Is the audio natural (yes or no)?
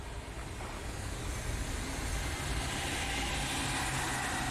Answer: yes